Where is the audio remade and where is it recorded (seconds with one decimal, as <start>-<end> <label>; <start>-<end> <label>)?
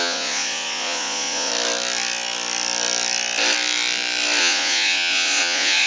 0.0-1.5 remade; 1.5-4.4 recorded; 4.4-5.9 remade